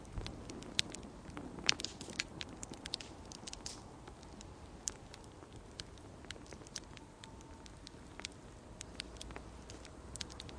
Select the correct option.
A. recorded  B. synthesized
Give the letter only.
A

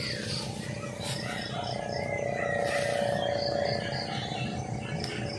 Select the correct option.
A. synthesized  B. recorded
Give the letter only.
B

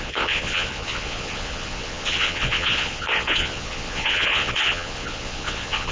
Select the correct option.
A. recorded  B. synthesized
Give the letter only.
B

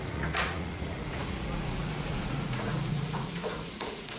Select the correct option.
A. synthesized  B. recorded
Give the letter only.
A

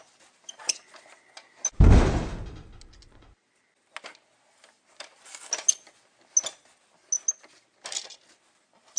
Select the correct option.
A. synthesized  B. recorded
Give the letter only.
B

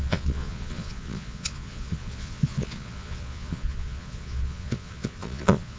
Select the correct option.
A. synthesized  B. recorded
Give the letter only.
A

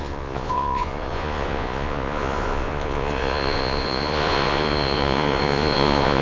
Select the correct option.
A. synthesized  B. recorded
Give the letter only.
A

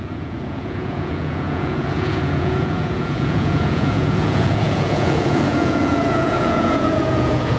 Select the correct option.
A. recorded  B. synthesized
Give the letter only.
B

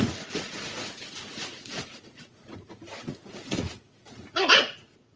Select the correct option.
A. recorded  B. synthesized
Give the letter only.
B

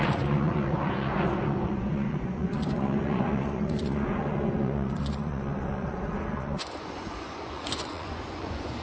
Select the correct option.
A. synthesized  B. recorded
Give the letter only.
A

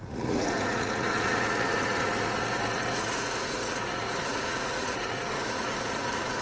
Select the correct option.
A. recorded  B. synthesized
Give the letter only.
B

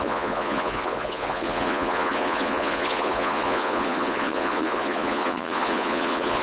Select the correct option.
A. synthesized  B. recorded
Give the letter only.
A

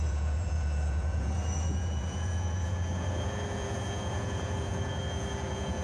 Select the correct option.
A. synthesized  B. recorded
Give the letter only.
A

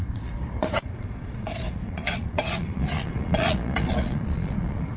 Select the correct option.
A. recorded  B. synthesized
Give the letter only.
B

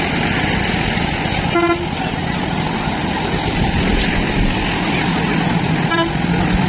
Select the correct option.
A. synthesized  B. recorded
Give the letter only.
B